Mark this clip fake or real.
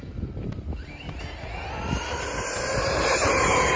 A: real